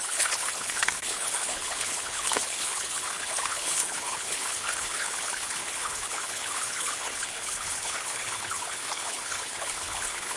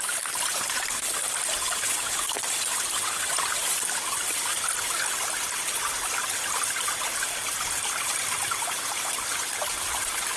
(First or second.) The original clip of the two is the second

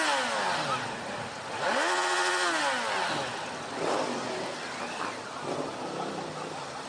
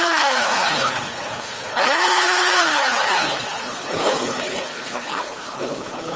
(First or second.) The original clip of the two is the first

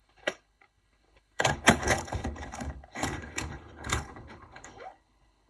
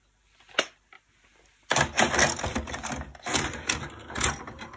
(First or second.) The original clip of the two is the second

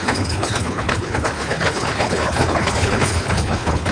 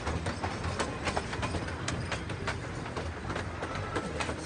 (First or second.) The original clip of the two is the second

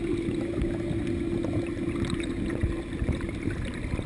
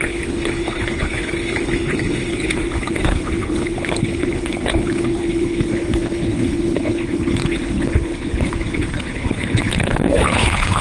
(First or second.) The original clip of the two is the first